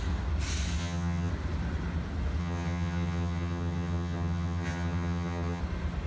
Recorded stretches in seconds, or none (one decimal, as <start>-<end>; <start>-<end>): 0.0-0.8; 1.3-2.4; 5.6-6.1